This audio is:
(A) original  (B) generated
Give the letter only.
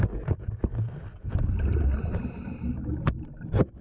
A